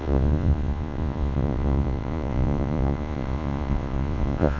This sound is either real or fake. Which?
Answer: fake